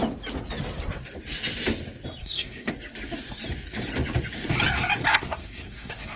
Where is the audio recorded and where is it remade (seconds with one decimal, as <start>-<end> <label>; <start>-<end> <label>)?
0.0-2.2 recorded; 2.2-2.7 remade; 2.7-5.1 recorded; 5.1-6.2 remade